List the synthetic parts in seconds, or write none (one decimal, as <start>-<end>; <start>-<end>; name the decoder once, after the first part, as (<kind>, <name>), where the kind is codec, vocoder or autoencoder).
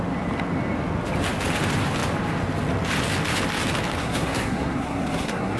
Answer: 4.0-5.6 (codec, SNAC)